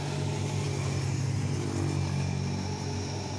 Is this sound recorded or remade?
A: recorded